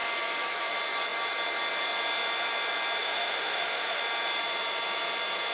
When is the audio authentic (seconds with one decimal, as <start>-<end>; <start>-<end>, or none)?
0.0-3.0; 4.0-5.5